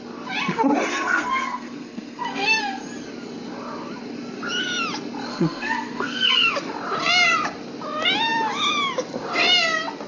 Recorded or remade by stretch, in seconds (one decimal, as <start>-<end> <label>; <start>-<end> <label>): 0.0-0.9 recorded; 0.9-2.8 remade; 2.8-5.3 recorded; 5.3-6.5 remade; 6.5-10.1 recorded